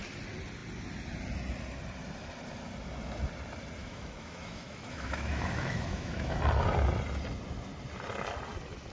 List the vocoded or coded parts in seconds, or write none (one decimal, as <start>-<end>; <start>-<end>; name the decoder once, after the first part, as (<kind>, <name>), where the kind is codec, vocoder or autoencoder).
3.8-6.4 (autoencoder, DAC-VAE)